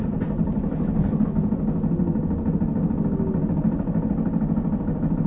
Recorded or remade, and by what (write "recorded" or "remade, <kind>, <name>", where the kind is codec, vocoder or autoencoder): recorded